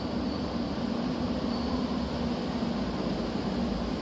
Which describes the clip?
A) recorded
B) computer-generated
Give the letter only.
A